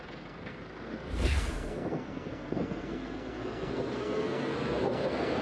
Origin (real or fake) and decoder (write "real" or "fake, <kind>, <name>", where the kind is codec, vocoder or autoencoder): fake, codec, SNAC